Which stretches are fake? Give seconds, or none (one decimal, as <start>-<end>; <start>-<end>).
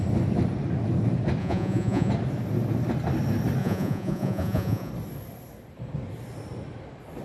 1.4-2.1; 3.6-4.9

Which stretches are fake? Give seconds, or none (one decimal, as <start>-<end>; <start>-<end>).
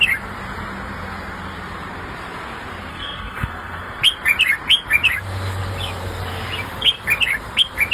2.9-4.0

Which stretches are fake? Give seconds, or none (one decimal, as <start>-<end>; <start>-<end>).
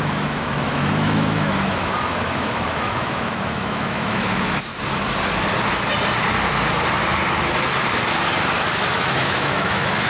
0.0-4.7; 9.0-10.1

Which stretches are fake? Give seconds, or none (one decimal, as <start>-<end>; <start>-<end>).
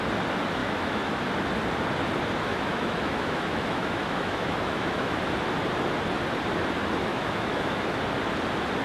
0.6-1.2; 2.5-5.2; 7.1-8.0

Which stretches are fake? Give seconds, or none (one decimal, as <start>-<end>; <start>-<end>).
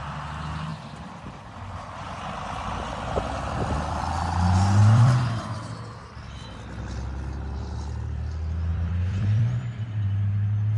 0.7-3.1; 4.8-5.4; 8.7-9.4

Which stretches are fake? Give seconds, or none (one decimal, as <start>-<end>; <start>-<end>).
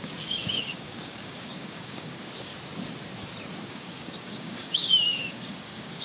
0.0-2.5; 3.6-6.0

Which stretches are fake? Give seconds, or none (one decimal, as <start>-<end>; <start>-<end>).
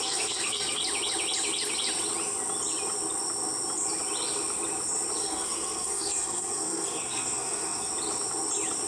0.0-0.8; 5.2-7.9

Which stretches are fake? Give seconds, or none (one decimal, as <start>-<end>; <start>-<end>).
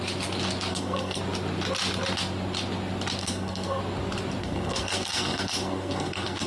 0.7-1.2; 3.2-3.8; 4.4-6.5